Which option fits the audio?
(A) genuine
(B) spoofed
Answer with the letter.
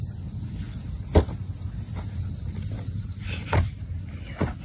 A